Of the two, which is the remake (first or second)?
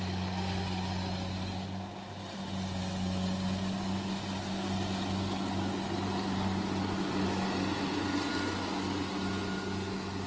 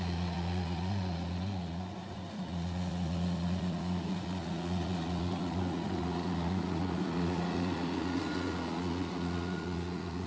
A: second